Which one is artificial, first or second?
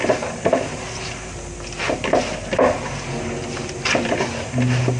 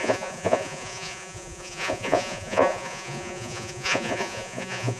second